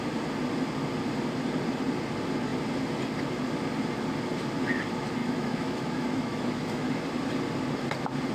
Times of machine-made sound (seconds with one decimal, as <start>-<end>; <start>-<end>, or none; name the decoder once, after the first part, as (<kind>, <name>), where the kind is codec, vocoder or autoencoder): 5.2-7.0 (autoencoder, DAC-VAE)